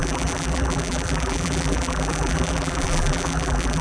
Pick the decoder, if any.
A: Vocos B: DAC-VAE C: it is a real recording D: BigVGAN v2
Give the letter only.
D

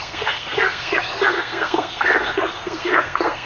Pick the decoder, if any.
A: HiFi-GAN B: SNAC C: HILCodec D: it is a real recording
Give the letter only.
B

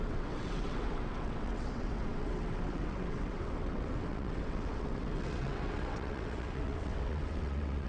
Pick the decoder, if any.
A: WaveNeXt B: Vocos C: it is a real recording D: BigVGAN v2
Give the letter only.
A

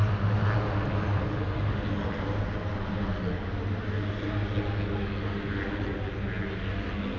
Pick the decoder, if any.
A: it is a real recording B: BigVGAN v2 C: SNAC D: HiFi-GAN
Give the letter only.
A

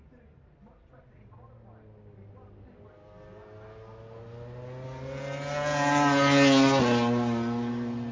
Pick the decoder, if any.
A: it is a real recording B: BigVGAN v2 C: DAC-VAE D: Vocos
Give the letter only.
A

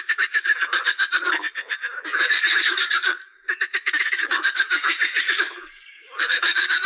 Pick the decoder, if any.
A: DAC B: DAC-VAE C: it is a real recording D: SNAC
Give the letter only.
A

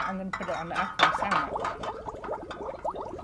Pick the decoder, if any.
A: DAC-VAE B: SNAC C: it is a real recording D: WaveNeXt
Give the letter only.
C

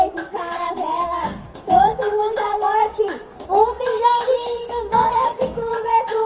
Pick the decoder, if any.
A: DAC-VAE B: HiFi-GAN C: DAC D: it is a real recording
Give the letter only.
C